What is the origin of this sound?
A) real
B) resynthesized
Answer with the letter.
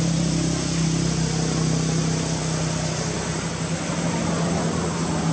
A